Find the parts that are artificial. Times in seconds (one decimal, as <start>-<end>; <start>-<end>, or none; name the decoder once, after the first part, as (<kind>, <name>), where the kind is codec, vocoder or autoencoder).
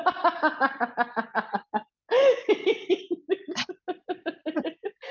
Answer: none